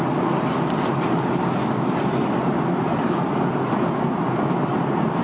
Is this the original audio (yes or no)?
yes